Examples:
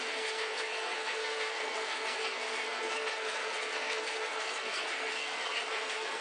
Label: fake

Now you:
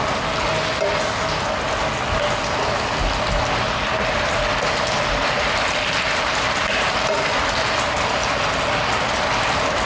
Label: real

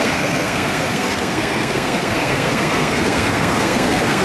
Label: fake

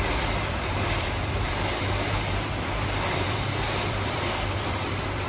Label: fake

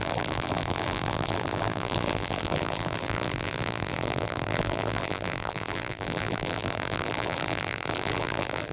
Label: fake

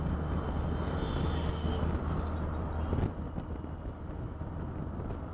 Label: real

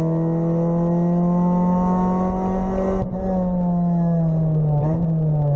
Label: real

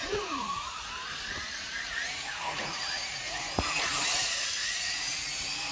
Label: fake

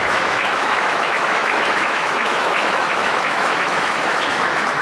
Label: fake